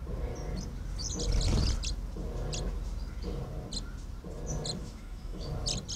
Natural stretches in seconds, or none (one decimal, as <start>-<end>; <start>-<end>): 0.0-4.8; 5.5-6.0